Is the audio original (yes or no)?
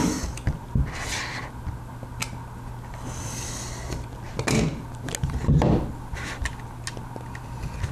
yes